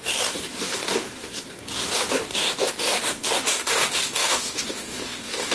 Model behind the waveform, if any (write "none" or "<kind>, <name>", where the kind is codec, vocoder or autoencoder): codec, DAC